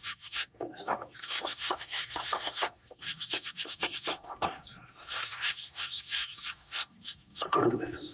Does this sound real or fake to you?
fake